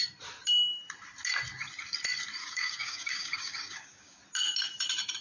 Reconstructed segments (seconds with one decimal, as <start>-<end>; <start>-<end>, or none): 2.4-4.2

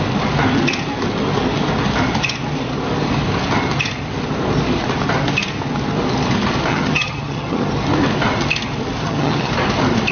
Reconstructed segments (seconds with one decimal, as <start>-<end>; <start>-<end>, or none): 6.7-7.7; 9.0-9.5

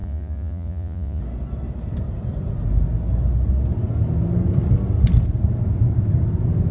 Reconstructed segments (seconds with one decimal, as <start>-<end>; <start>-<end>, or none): 0.0-1.2

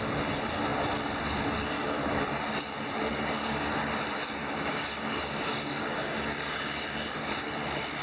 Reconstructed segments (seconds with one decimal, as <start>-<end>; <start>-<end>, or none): 3.1-3.7; 4.4-7.3

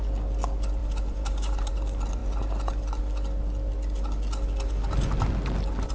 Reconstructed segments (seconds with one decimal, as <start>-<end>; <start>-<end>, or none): 0.8-1.7